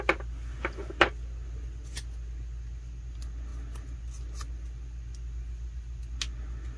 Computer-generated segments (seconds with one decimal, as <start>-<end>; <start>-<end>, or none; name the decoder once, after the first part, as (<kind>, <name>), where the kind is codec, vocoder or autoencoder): none